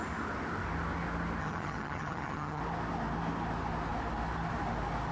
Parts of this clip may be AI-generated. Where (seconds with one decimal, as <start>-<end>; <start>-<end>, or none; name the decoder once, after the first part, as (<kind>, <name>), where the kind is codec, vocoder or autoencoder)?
1.4-2.6 (vocoder, HiFi-GAN)